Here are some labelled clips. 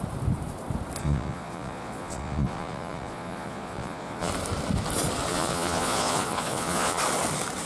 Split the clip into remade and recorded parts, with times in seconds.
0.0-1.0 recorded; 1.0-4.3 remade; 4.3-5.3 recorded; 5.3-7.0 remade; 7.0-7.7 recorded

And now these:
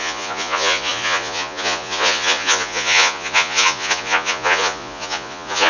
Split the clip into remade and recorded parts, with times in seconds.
0.0-5.7 remade

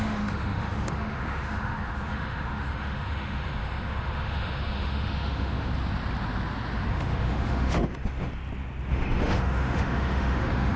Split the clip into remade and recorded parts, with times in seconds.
0.0-5.7 remade; 5.7-6.9 recorded; 6.9-8.3 remade; 8.3-8.9 recorded; 8.9-10.8 remade

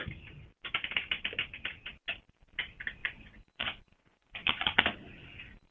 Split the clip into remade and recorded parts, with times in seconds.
0.0-3.0 recorded; 3.0-4.8 remade; 4.8-5.7 recorded

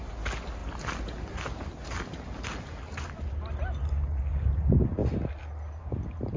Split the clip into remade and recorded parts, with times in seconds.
0.0-6.4 recorded